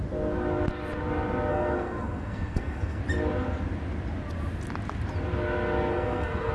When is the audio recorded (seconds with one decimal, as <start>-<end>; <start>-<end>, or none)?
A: 0.0-1.5; 3.0-5.9